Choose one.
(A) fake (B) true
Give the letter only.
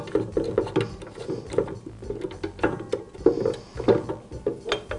B